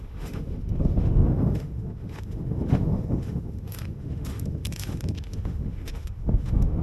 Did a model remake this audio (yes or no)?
yes